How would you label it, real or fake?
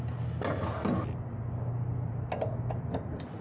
real